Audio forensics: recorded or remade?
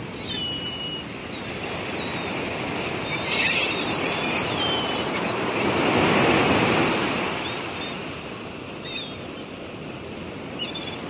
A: recorded